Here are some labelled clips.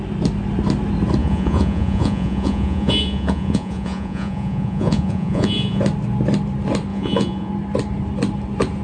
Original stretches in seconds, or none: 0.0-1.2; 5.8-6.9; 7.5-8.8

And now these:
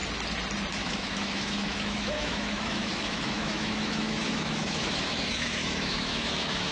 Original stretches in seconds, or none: 0.0-0.7

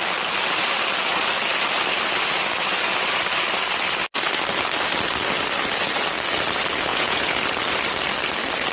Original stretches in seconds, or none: 0.0-6.9; 7.4-8.7

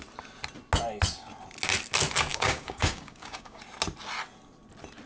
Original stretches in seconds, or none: 0.0-2.3; 3.6-5.1

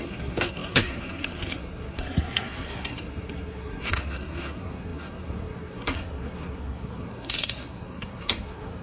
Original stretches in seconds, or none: none

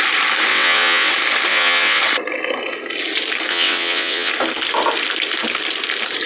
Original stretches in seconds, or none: 0.0-0.5; 1.1-1.5; 2.0-3.5; 4.3-6.3

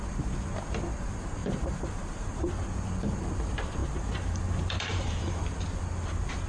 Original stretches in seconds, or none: 0.0-1.4; 2.6-3.8; 5.3-6.5